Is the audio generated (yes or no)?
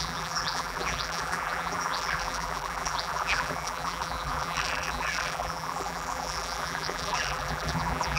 yes